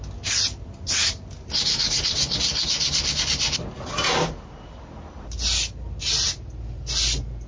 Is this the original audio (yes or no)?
yes